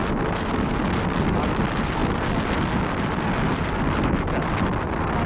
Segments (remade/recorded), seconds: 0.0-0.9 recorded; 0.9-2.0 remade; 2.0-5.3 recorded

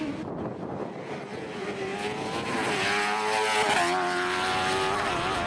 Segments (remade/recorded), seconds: 0.0-5.5 recorded

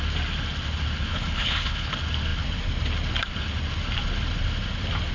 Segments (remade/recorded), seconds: 0.0-1.1 recorded; 1.1-1.9 remade; 1.9-5.1 recorded

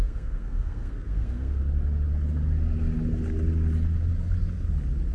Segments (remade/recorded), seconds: 0.0-1.6 remade; 1.6-5.1 recorded

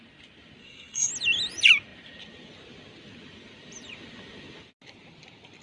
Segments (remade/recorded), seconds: 0.0-0.6 recorded; 0.6-1.1 remade; 1.1-5.6 recorded

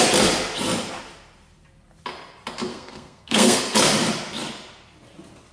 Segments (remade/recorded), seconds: 0.0-2.7 recorded; 2.7-3.6 remade; 3.6-5.5 recorded